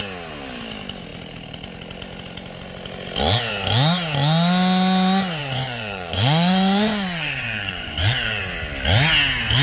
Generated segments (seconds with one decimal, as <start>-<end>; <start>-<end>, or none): 5.4-8.4